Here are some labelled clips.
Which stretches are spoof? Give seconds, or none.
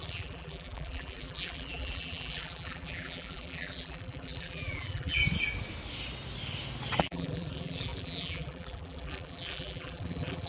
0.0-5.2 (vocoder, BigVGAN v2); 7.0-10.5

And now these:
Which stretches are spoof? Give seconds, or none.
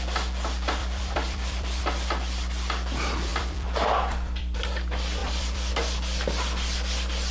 0.8-1.8 (vocoder, BigVGAN v2); 3.3-4.6; 5.2-5.7